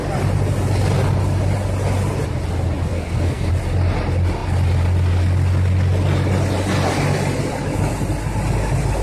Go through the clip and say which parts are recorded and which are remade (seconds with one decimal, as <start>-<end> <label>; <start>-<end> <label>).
0.0-2.9 recorded; 2.9-3.5 remade; 3.5-9.0 recorded